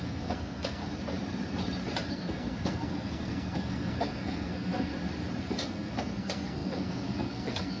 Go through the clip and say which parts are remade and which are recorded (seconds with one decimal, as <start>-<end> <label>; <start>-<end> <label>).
0.0-0.8 remade; 0.8-2.1 recorded; 2.1-4.9 remade; 4.9-5.4 recorded; 5.4-7.8 remade